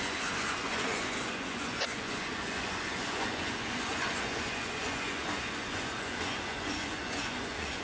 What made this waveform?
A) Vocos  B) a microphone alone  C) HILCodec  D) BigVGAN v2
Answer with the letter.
A